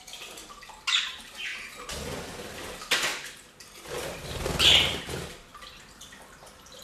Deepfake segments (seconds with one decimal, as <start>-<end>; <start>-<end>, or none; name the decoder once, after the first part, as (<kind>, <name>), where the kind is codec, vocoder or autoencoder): 0.0-0.4 (vocoder, BigVGAN v2); 1.1-1.5; 2.6-3.1; 4.9-6.8